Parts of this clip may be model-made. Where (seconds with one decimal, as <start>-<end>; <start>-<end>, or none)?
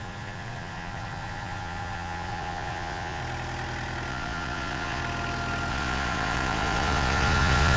0.0-3.2; 4.1-5.0; 5.7-7.8